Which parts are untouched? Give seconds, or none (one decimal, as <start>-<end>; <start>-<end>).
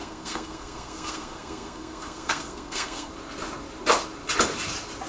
3.1-5.1